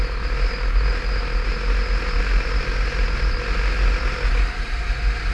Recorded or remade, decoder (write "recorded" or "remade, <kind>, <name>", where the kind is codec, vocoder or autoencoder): recorded